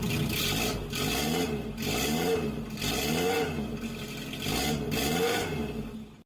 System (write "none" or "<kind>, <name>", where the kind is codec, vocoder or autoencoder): none